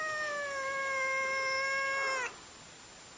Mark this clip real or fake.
real